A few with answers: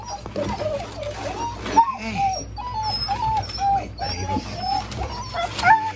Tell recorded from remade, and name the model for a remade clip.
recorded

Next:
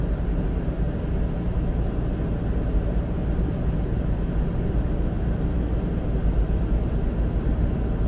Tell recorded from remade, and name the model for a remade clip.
recorded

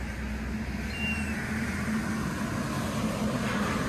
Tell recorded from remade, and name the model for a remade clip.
recorded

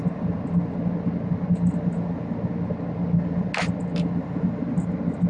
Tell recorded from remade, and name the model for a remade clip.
recorded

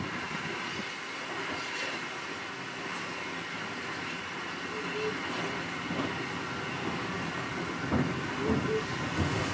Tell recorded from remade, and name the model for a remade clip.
recorded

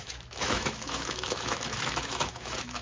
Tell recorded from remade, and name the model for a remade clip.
remade, autoencoder, DAC-VAE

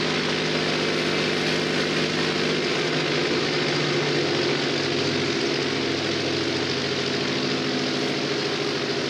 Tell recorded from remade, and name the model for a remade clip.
recorded